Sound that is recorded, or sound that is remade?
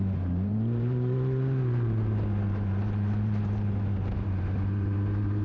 remade